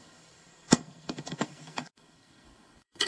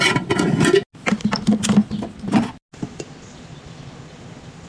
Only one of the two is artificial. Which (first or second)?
first